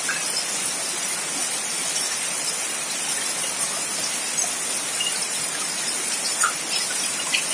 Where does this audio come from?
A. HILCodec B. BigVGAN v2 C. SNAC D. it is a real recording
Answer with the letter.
D